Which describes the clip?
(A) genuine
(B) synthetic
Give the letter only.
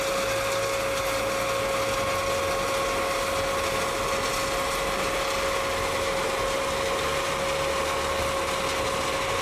A